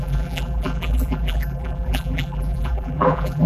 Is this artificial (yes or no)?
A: yes